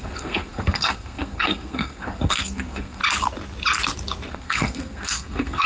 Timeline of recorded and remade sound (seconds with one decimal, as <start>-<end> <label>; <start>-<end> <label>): 0.0-3.0 remade; 3.0-4.3 recorded; 4.3-5.7 remade